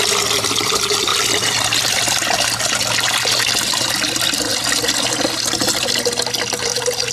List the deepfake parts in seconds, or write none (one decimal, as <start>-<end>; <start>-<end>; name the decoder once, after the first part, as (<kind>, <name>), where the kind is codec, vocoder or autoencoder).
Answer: none